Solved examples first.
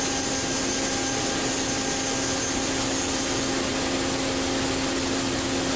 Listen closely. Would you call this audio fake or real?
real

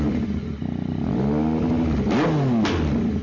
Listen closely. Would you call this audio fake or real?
real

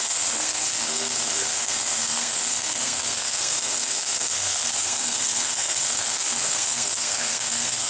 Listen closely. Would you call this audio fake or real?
fake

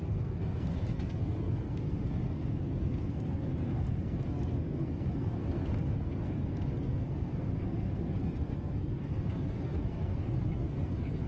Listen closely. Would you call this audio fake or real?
fake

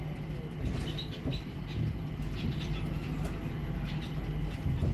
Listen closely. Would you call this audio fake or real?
real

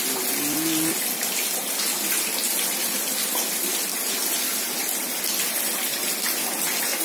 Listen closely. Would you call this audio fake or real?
real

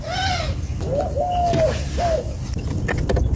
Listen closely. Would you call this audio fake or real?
real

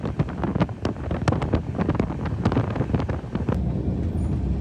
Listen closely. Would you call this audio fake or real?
real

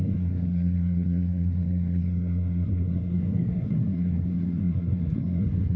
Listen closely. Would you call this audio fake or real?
fake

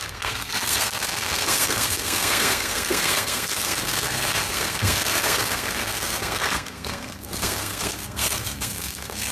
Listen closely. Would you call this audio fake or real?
fake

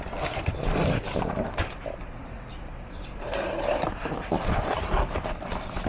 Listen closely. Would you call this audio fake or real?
real